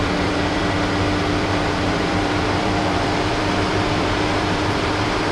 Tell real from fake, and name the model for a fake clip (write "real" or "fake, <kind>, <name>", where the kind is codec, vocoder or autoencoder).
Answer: fake, vocoder, BigVGAN v2